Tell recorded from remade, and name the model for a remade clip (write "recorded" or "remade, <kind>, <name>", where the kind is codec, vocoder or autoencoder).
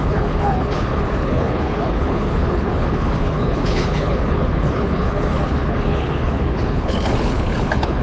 remade, codec, HILCodec